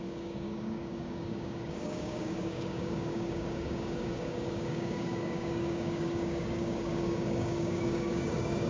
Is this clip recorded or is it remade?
remade